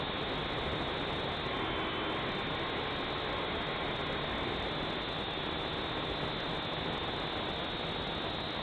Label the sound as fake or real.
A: real